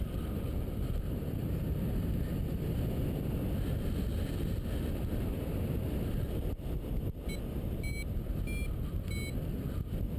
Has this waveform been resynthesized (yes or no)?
no